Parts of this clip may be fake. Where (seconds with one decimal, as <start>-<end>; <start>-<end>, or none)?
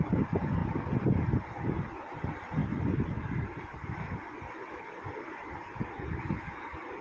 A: none